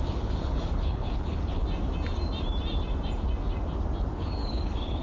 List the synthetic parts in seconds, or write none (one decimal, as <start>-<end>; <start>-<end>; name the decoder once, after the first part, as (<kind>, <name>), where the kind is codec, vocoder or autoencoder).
0.0-1.6 (codec, HILCodec); 4.1-5.0